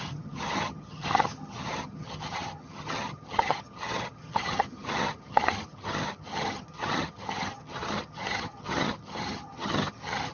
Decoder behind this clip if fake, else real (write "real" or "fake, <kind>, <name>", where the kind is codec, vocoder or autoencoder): fake, vocoder, HiFi-GAN